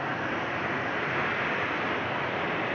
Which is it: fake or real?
real